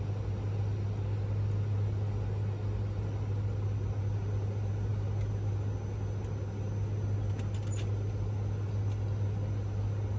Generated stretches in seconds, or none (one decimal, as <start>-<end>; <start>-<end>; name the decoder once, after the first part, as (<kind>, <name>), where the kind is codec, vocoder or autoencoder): none